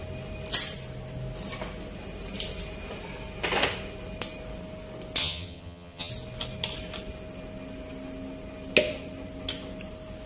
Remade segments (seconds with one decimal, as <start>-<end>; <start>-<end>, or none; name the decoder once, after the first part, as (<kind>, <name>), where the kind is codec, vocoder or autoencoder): 5.2-6.1 (vocoder, HiFi-GAN)